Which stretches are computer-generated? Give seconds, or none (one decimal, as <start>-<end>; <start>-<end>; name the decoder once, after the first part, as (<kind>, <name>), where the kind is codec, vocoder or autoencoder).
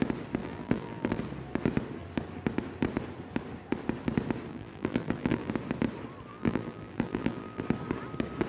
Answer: 0.4-1.2 (vocoder, BigVGAN v2); 4.5-5.5; 6.3-7.6